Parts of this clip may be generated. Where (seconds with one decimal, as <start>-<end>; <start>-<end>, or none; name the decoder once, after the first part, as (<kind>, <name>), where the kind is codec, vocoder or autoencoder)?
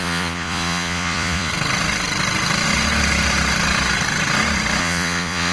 0.0-1.5 (vocoder, Vocos); 4.8-5.5